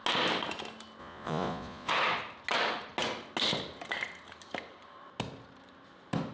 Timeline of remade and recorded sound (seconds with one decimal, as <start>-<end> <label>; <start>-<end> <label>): 0.0-1.0 recorded; 1.0-1.9 remade; 1.9-6.3 recorded